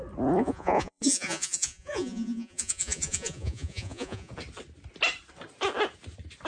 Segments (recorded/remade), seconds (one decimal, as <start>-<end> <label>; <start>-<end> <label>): 0.0-0.4 recorded; 0.4-4.3 remade; 4.3-6.5 recorded

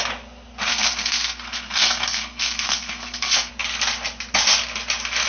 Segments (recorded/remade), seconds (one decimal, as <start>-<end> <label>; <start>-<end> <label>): 0.0-0.7 recorded; 0.7-3.5 remade; 3.5-5.3 recorded

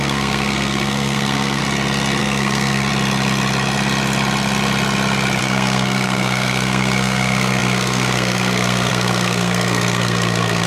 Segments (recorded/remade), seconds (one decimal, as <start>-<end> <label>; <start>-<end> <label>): 0.0-1.6 remade; 1.6-2.2 recorded; 2.2-2.9 remade; 2.9-5.4 recorded; 5.4-10.7 remade

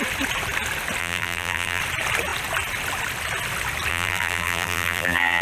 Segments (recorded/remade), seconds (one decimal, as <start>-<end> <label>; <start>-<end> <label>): 0.0-1.0 recorded; 1.0-1.8 remade; 1.8-3.9 recorded; 3.9-5.4 remade